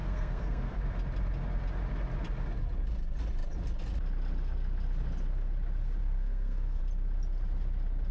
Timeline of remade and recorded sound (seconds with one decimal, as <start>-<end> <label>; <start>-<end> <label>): 0.0-0.8 remade; 0.8-6.0 recorded; 6.0-6.8 remade; 6.8-8.1 recorded